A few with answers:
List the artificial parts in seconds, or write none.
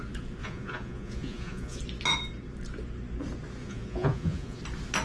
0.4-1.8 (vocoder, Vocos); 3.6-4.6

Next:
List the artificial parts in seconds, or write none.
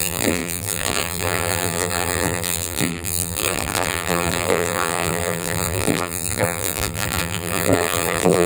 0.0-8.5 (vocoder, BigVGAN v2)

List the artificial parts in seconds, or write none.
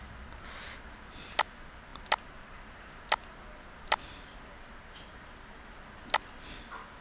none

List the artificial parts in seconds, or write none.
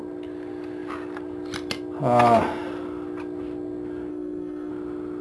4.1-4.7 (codec, SNAC)